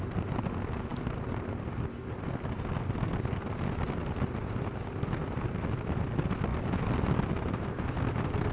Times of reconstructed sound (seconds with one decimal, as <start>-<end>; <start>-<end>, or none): none